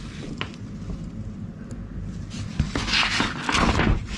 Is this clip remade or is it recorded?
recorded